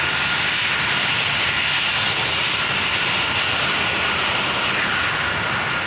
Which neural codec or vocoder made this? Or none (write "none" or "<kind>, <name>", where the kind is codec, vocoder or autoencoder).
none